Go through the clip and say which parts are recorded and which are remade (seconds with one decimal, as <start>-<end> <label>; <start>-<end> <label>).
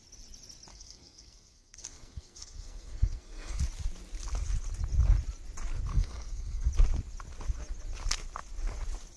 0.0-0.7 recorded; 0.7-3.6 remade; 3.6-5.9 recorded; 5.9-6.7 remade; 6.7-9.2 recorded